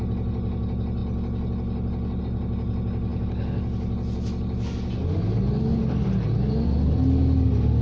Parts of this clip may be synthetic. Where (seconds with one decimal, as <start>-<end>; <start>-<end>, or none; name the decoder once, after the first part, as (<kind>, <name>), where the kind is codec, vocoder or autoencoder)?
none